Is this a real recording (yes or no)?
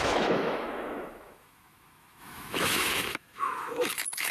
no